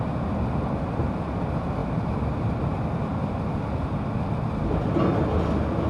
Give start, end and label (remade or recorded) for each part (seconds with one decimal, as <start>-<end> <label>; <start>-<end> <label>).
0.0-5.9 recorded

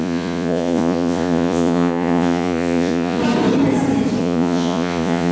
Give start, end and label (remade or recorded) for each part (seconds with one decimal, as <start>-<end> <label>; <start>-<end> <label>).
0.0-3.2 remade; 3.2-4.2 recorded; 4.2-5.3 remade